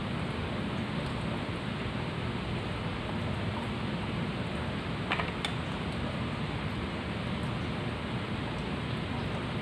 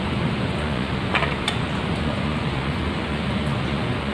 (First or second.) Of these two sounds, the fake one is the second